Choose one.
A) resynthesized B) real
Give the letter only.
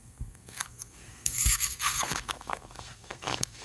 A